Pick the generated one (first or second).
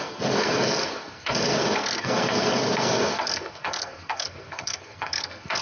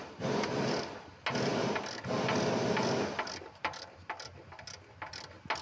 first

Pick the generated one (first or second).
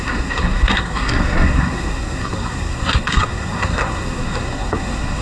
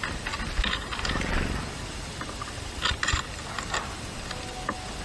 first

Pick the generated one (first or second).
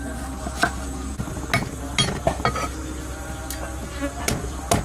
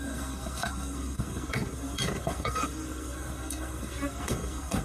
second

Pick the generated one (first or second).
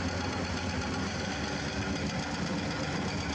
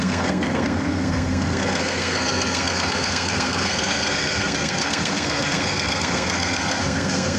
second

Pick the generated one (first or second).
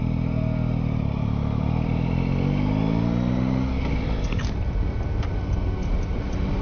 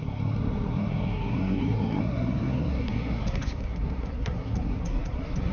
second